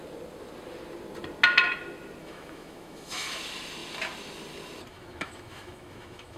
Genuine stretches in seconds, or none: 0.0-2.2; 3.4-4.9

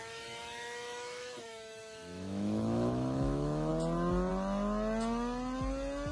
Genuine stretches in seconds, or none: 3.7-6.1

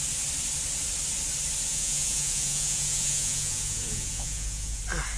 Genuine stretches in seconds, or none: 0.0-1.7; 4.8-5.2

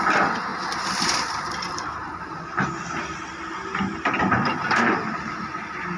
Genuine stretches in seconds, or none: 0.0-6.0

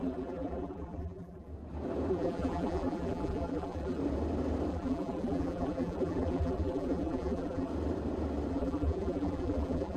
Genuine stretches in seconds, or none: 1.5-2.1; 4.0-4.7; 7.7-8.5